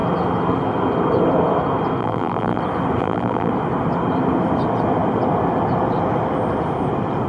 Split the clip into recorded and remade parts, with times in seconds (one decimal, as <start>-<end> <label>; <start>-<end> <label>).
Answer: 0.0-2.0 recorded; 2.0-2.6 remade; 2.6-3.0 recorded; 3.0-3.5 remade; 3.5-7.3 recorded

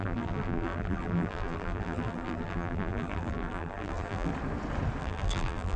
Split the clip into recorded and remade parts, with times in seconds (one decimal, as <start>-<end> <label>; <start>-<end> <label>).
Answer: 0.0-4.3 remade; 4.3-5.0 recorded; 5.0-5.8 remade

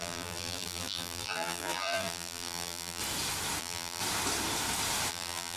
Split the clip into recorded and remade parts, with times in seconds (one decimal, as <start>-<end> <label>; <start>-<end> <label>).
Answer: 0.0-3.0 remade; 3.0-3.6 recorded; 3.6-4.0 remade; 4.0-5.1 recorded; 5.1-5.6 remade

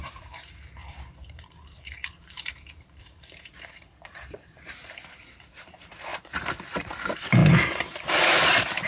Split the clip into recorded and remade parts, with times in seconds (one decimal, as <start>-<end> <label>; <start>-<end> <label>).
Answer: 0.0-8.9 remade

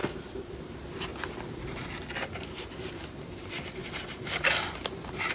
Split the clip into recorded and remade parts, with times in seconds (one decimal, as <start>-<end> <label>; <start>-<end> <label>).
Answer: 0.0-0.5 recorded; 0.5-1.1 remade; 1.1-2.4 recorded; 2.4-3.8 remade; 3.8-4.7 recorded; 4.7-5.3 remade

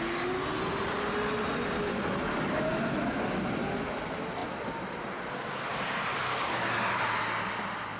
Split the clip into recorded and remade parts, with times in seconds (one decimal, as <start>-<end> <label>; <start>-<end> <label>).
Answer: 0.0-5.7 recorded; 5.7-6.5 remade; 6.5-8.0 recorded

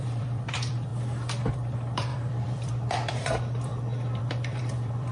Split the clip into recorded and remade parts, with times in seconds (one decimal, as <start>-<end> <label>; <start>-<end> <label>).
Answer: 0.0-0.9 remade; 0.9-1.5 recorded; 1.5-5.1 remade